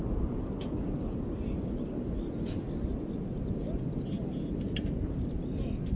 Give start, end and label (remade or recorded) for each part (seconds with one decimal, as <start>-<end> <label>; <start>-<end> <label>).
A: 0.0-6.0 recorded